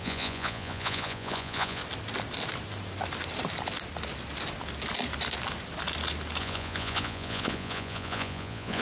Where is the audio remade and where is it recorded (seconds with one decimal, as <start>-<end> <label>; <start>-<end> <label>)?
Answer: 0.0-1.8 remade; 1.8-6.4 recorded; 6.4-8.8 remade